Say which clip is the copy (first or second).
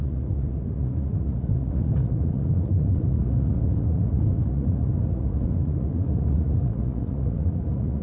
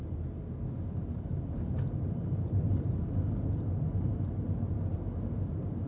first